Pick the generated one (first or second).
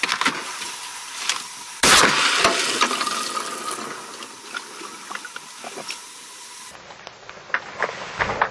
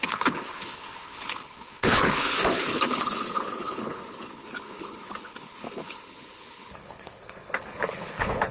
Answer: second